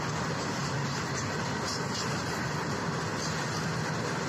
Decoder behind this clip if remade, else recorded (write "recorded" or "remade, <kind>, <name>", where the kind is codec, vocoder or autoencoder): recorded